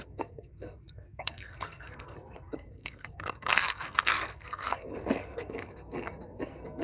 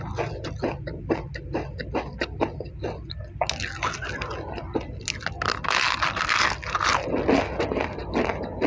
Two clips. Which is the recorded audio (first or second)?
second